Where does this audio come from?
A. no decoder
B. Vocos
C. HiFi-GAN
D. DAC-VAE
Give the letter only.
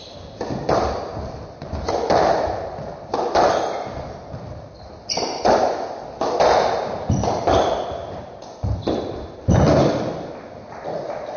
A